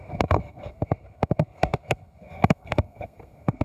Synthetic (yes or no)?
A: yes